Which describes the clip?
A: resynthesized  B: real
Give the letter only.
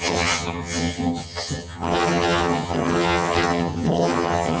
A